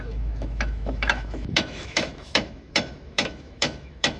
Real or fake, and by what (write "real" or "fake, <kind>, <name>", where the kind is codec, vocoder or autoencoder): fake, autoencoder, DAC-VAE